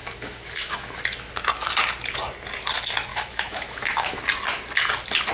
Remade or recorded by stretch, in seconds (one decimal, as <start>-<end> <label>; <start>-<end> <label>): 0.0-1.0 remade; 1.0-3.1 recorded; 3.1-4.2 remade; 4.2-5.3 recorded